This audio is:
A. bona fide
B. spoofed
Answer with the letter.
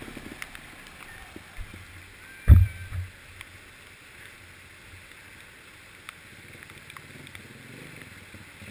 A